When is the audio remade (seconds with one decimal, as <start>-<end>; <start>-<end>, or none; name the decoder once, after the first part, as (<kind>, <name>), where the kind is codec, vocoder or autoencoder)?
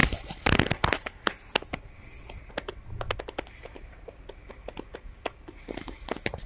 none